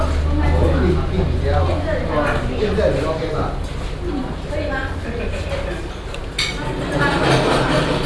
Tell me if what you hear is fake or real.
real